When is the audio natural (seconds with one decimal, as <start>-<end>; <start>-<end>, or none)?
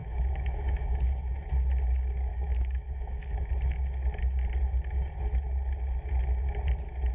1.3-2.3; 3.5-7.1